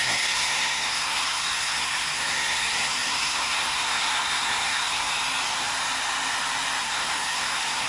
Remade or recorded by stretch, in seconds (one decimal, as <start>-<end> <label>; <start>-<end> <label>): 0.0-5.1 remade; 5.1-6.8 recorded; 6.8-7.9 remade